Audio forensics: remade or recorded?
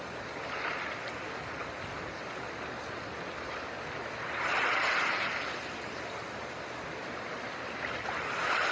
remade